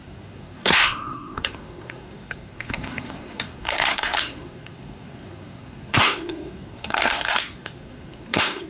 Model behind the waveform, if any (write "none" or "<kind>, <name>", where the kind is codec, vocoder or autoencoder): codec, SNAC